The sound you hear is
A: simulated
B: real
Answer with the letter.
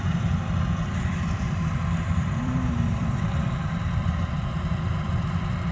A